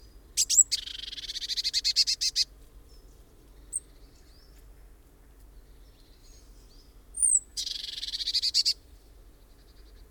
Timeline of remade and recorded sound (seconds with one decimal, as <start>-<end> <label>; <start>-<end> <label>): 0.0-6.2 recorded; 6.2-6.7 remade; 6.7-7.5 recorded; 7.5-9.1 remade; 9.1-10.1 recorded